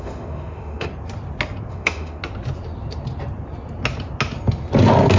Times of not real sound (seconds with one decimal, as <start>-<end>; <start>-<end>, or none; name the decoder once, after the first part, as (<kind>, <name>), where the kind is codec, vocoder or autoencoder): 0.0-0.9 (autoencoder, DAC-VAE); 1.7-2.2